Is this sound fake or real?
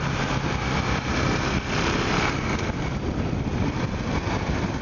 real